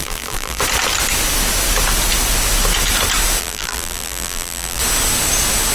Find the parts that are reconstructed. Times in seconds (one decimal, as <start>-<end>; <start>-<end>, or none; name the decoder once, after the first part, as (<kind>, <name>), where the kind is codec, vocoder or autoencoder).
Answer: 0.0-0.6 (vocoder, BigVGAN v2); 3.4-4.8